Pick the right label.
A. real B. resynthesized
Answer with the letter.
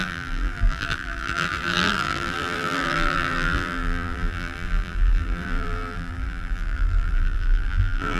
B